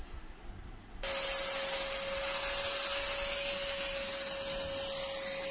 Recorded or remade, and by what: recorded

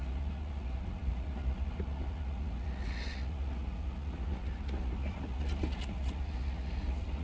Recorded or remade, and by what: remade, vocoder, Vocos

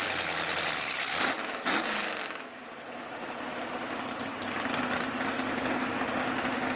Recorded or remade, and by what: recorded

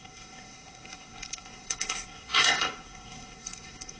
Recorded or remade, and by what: remade, codec, SNAC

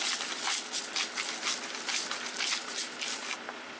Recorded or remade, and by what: recorded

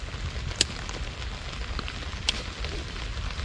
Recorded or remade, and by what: recorded